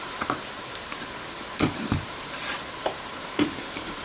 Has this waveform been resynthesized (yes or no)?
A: yes